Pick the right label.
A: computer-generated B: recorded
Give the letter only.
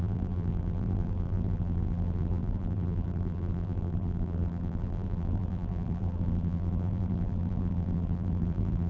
A